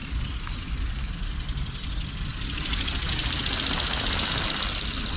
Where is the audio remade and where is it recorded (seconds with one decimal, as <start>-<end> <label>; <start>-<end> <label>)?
0.0-5.2 recorded

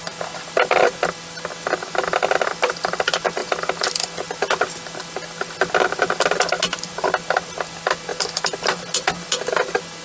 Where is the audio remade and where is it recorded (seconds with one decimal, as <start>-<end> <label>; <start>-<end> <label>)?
0.0-10.0 recorded

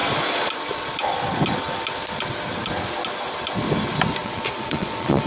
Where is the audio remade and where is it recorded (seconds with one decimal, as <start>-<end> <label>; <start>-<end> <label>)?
0.0-0.5 remade; 0.5-4.2 recorded; 4.2-5.3 remade

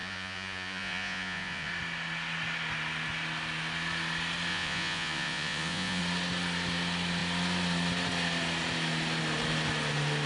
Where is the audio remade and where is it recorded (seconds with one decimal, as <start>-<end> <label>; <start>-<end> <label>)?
0.0-1.7 remade; 1.7-4.5 recorded; 4.5-6.0 remade; 6.0-10.3 recorded